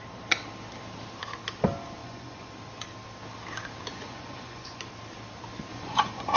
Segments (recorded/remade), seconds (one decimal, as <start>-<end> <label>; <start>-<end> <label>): 0.0-2.0 recorded; 2.0-2.5 remade; 2.5-3.9 recorded; 3.9-4.8 remade; 4.8-5.7 recorded; 5.7-6.4 remade